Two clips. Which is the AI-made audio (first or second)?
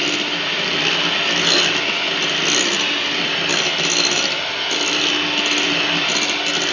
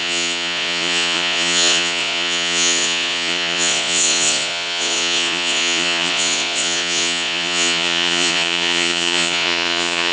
second